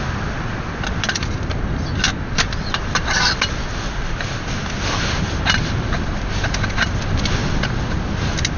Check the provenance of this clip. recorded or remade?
recorded